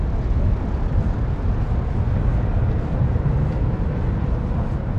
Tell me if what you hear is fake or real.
real